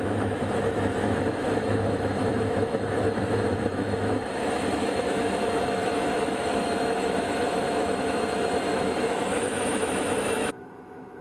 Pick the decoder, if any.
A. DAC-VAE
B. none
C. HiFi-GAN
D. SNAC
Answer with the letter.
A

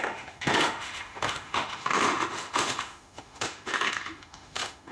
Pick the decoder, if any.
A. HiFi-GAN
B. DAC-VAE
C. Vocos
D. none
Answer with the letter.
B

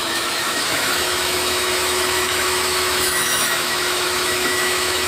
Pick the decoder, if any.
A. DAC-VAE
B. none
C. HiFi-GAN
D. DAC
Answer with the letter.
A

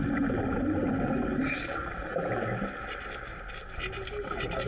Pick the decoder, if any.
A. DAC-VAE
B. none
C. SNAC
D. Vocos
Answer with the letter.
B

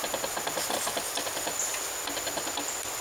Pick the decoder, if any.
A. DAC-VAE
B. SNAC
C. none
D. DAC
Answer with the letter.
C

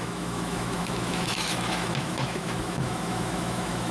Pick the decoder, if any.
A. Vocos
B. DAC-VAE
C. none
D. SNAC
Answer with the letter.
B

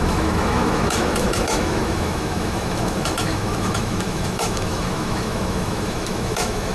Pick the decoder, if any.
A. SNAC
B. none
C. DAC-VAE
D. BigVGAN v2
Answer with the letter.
C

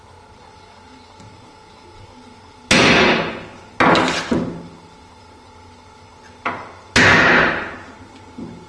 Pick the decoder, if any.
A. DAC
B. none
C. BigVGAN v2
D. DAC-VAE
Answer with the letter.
B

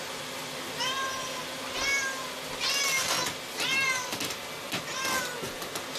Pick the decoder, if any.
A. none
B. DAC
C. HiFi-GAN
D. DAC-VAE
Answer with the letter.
A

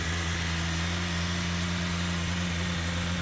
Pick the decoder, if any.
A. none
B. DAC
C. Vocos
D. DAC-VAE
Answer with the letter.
A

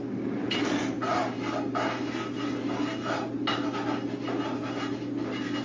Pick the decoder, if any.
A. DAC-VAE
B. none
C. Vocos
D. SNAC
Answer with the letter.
B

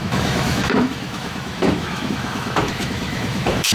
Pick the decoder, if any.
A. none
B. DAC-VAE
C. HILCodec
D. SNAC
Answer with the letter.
B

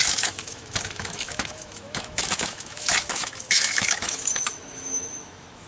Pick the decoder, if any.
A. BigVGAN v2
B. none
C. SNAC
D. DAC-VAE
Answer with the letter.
D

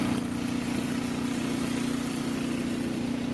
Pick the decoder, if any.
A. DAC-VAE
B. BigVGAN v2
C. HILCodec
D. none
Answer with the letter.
D